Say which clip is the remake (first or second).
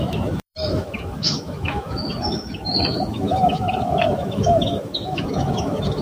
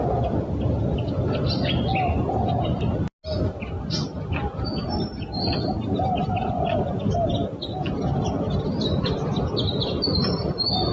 first